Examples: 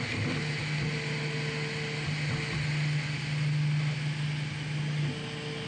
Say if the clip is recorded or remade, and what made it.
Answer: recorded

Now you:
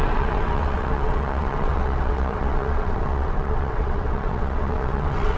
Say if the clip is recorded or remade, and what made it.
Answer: remade, vocoder, WaveNeXt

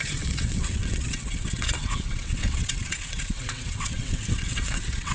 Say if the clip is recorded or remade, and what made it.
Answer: remade, vocoder, WaveNeXt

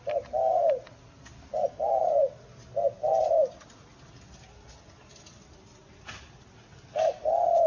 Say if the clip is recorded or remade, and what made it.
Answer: recorded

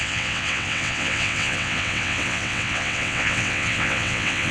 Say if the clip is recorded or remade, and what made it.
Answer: remade, vocoder, WaveNeXt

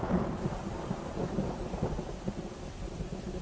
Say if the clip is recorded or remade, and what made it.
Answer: recorded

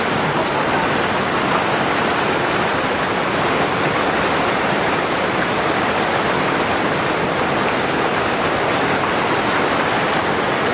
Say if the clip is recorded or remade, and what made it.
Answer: recorded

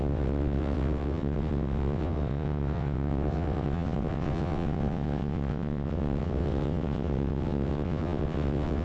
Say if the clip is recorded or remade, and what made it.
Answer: remade, vocoder, WaveNeXt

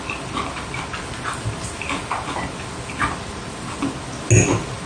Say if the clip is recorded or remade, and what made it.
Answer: recorded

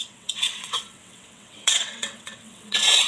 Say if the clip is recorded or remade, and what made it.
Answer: remade, vocoder, WaveNeXt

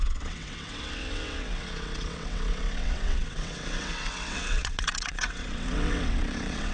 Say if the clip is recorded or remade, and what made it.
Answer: remade, vocoder, WaveNeXt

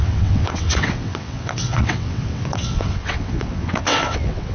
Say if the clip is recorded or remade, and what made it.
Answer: remade, vocoder, WaveNeXt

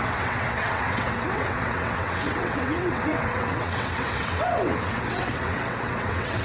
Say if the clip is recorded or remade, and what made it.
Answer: remade, vocoder, WaveNeXt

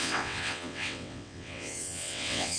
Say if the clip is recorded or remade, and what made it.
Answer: remade, vocoder, WaveNeXt